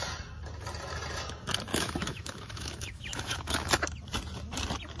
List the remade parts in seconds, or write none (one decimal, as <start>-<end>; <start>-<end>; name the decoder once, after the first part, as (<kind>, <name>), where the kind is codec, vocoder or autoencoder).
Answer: 1.7-3.7 (autoencoder, DAC-VAE)